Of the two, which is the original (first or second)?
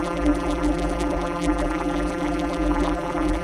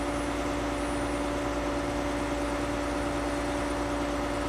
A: second